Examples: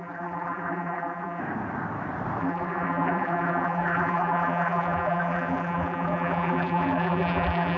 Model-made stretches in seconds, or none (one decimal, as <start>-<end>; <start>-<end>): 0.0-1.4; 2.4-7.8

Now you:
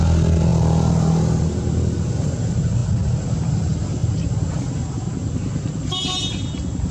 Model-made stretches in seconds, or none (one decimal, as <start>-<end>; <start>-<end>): none

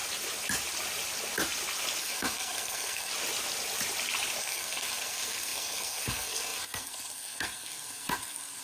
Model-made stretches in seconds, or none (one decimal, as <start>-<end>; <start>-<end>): 2.0-3.1; 4.4-8.6